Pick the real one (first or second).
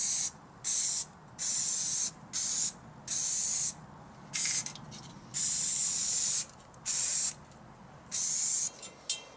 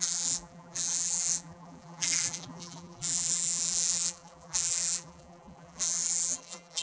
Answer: first